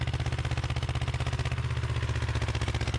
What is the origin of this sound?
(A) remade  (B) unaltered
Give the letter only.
B